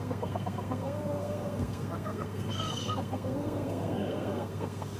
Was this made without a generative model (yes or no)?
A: no